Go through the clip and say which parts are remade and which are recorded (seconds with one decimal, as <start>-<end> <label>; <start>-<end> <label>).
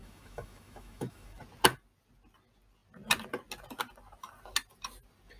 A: 0.0-1.4 remade; 1.4-5.4 recorded